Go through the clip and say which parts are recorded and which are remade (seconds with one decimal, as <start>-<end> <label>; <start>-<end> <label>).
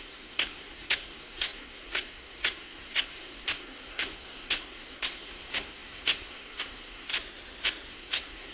0.0-7.1 remade; 7.1-7.9 recorded; 7.9-8.5 remade